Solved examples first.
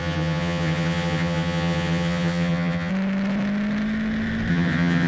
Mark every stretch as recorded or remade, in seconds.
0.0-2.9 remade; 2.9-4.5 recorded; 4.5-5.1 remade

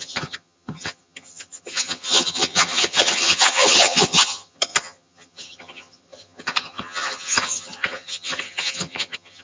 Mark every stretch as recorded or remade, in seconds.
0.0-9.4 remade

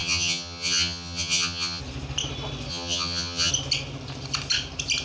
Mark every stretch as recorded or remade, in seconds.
0.0-1.8 remade; 1.8-2.7 recorded; 2.7-3.5 remade; 3.5-5.0 recorded

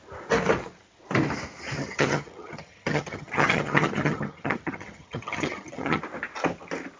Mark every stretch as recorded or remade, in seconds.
0.0-1.8 recorded; 1.8-6.0 remade; 6.0-7.0 recorded

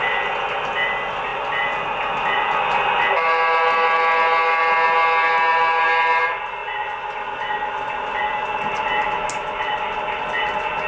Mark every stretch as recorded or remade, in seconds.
0.0-10.9 recorded

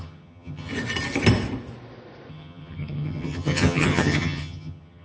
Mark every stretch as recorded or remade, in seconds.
0.0-0.7 remade; 0.7-2.3 recorded; 2.3-5.0 remade

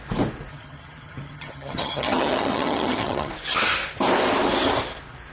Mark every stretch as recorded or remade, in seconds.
0.0-0.5 recorded; 0.5-3.3 remade; 3.3-5.3 recorded

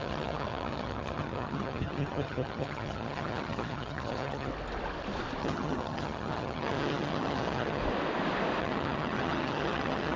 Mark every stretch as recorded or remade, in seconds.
0.0-4.5 remade; 4.5-5.4 recorded; 5.4-7.8 remade; 7.8-8.6 recorded; 8.6-10.2 remade